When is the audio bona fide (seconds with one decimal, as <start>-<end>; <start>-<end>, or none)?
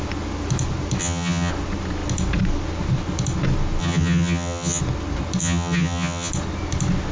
0.0-1.0; 1.5-3.8; 4.8-5.4; 6.3-7.1